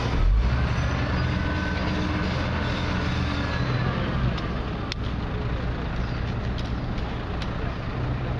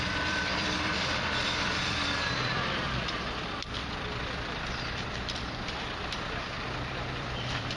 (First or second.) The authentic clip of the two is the first